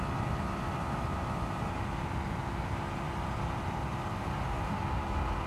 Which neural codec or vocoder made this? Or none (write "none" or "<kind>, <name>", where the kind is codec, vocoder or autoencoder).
none